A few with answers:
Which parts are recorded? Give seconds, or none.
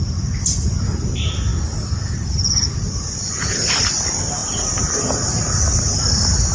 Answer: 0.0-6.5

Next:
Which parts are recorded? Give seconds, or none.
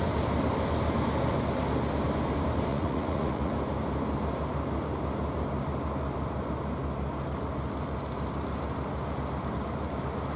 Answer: 0.0-2.7; 3.5-10.4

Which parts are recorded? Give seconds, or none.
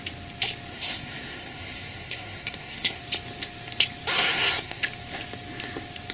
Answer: 0.0-0.7; 3.0-4.1; 4.8-6.1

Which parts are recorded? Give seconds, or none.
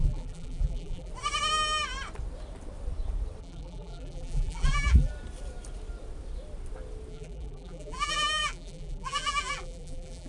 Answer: 1.1-3.4; 5.1-7.1